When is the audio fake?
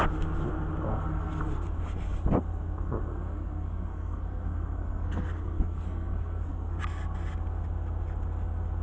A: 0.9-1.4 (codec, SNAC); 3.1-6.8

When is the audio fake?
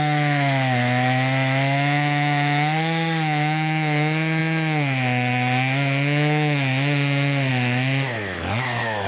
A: 0.0-9.1 (autoencoder, DAC-VAE)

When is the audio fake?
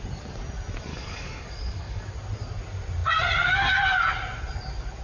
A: 0.9-2.1 (codec, DAC)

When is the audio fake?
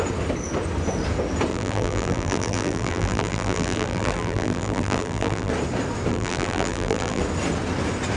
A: 1.5-5.5 (vocoder, BigVGAN v2); 6.1-7.2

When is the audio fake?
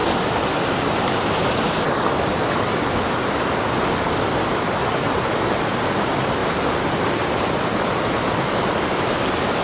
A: none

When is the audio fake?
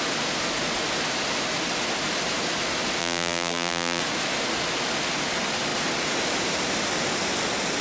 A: 3.0-4.0 (vocoder, BigVGAN v2)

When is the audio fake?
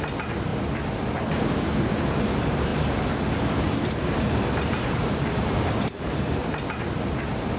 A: 0.0-0.5 (vocoder, BigVGAN v2); 1.2-7.6